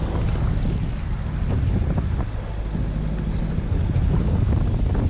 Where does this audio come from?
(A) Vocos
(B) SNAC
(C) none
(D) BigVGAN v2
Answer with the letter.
C